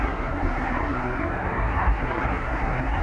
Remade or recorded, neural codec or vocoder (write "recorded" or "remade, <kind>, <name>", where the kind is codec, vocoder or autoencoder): remade, codec, SNAC